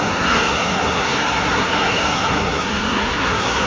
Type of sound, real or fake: fake